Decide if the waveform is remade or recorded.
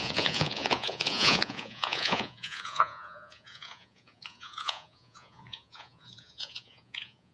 remade